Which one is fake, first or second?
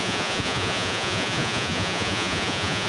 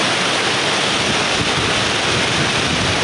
first